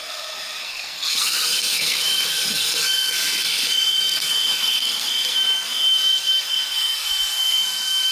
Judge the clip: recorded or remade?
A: remade